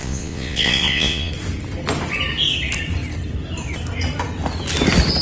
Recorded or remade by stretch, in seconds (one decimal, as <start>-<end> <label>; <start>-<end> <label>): 0.0-1.3 remade; 1.3-5.2 recorded